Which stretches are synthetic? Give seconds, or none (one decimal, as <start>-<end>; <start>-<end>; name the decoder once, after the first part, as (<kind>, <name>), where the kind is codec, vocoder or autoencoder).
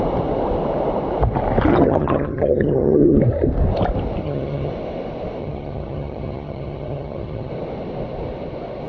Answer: 1.7-3.2 (vocoder, HiFi-GAN); 4.2-4.7; 5.4-7.5